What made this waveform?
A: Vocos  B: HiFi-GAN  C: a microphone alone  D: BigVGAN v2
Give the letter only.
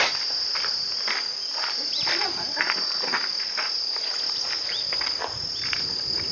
C